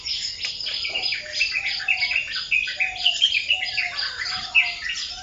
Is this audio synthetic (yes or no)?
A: no